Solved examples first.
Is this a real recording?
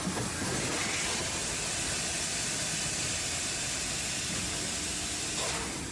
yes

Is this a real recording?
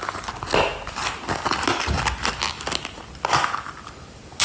yes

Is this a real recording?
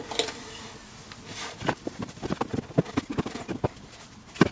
yes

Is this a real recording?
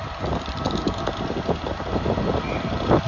yes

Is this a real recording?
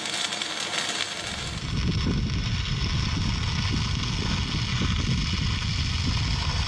yes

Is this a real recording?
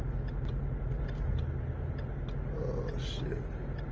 yes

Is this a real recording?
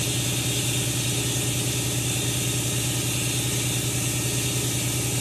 yes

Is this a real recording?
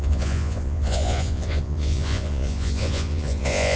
no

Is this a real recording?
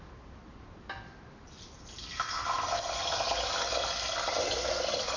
yes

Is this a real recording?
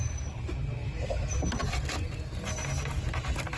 yes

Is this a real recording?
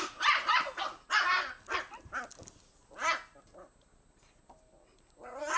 yes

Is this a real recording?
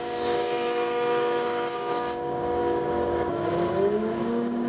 no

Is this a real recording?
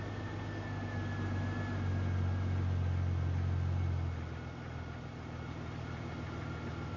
yes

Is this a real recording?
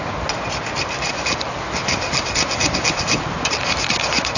yes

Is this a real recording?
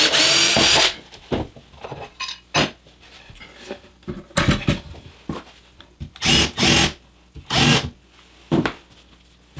yes